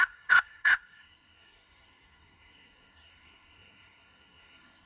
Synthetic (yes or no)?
yes